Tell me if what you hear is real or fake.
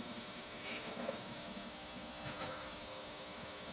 fake